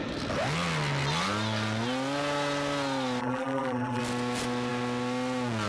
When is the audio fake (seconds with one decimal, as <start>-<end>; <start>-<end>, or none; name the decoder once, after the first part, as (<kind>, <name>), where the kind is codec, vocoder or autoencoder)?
3.2-4.0 (vocoder, BigVGAN v2)